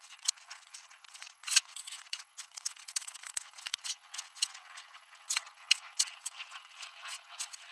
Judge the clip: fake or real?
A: fake